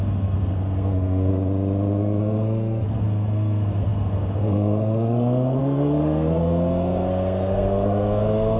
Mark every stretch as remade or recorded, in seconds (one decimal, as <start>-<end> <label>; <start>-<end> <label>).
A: 0.0-1.3 remade; 1.3-2.2 recorded; 2.2-8.6 remade